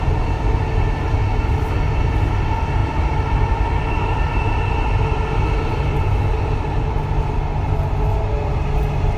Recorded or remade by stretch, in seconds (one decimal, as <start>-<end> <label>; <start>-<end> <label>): 0.0-9.2 recorded